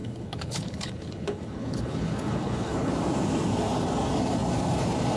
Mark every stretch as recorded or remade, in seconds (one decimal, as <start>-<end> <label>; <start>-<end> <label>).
0.0-2.9 remade; 2.9-5.2 recorded